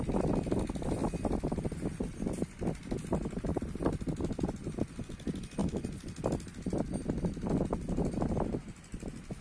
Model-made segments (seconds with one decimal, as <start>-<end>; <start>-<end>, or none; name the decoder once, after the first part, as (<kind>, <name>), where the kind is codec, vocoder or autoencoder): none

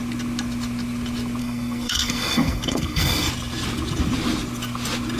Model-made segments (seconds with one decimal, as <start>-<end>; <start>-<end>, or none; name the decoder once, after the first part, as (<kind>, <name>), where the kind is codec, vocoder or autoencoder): 1.4-3.3 (codec, SNAC)

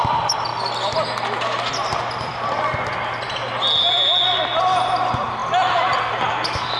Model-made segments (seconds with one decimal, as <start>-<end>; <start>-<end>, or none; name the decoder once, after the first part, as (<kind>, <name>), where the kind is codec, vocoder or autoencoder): none

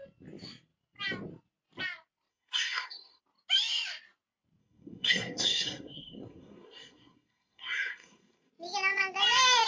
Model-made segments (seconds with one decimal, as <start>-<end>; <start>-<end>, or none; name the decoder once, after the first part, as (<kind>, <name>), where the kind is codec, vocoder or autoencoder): 2.3-3.2 (codec, SNAC); 4.6-8.5